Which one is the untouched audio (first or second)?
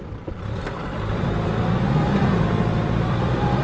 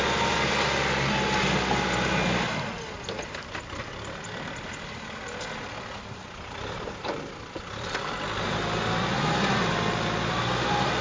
second